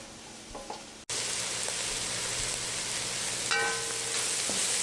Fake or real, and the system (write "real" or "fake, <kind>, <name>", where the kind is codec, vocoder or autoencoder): real